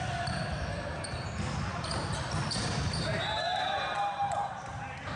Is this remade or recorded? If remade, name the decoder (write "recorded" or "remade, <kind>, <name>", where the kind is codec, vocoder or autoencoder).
recorded